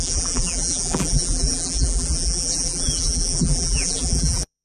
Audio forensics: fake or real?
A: fake